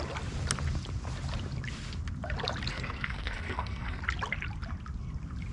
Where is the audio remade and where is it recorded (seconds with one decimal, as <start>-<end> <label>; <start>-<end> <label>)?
0.0-2.7 recorded; 2.7-4.0 remade; 4.0-5.5 recorded